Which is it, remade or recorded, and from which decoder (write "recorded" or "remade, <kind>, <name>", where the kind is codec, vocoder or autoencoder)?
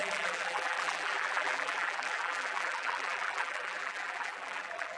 remade, vocoder, BigVGAN v2